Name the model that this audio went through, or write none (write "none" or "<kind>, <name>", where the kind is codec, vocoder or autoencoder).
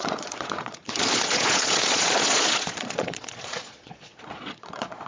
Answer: vocoder, Vocos